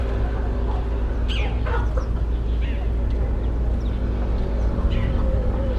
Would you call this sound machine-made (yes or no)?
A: no